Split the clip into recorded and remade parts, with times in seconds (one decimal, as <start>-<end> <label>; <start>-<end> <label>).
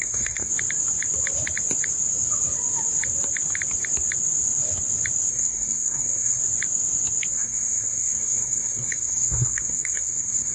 0.0-0.5 remade; 0.5-5.3 recorded; 5.3-6.4 remade; 6.4-7.3 recorded; 7.3-10.5 remade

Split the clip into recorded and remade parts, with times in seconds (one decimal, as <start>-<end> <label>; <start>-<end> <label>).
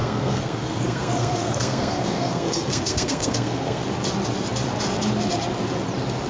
0.0-3.8 remade; 3.8-6.3 recorded